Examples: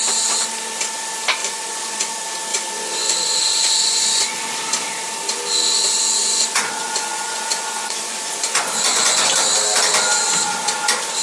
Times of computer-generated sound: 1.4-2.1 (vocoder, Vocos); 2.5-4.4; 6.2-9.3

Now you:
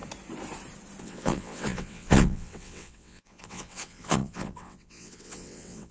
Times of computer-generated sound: 1.0-5.9 (vocoder, WaveNeXt)

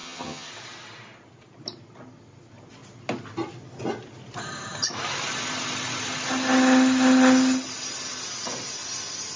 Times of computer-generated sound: 0.0-0.5 (vocoder, HiFi-GAN)